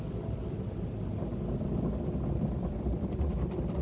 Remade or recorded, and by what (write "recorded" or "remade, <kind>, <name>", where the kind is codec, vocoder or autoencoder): recorded